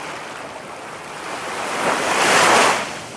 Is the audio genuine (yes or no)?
yes